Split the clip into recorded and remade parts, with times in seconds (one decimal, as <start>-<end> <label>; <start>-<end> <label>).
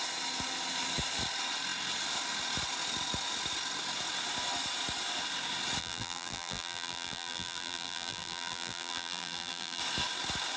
0.0-5.8 recorded; 5.8-9.8 remade; 9.8-10.6 recorded